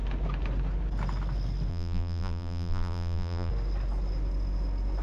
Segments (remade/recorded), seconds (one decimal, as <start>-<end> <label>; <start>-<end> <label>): 0.0-1.7 recorded; 1.7-3.5 remade; 3.5-5.0 recorded